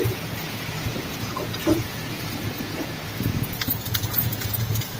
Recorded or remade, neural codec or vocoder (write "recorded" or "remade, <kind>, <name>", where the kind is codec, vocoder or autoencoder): remade, vocoder, Vocos